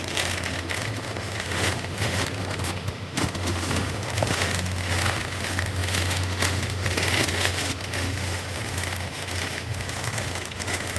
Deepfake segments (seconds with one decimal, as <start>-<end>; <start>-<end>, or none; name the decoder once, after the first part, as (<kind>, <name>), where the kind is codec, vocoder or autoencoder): 0.0-11.0 (autoencoder, DAC-VAE)